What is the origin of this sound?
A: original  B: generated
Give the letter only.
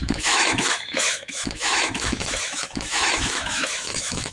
B